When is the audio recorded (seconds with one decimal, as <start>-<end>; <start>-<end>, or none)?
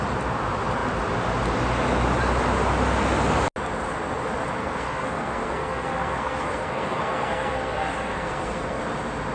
0.0-4.6; 8.8-9.3